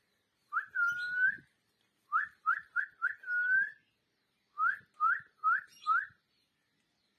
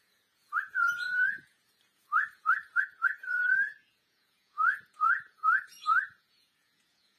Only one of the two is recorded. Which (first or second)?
first